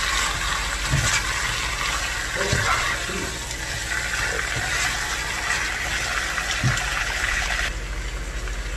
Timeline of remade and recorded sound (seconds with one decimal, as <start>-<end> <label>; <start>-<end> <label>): 0.0-7.0 recorded; 7.0-7.5 remade; 7.5-8.8 recorded